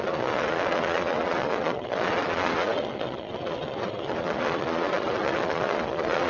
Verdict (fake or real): fake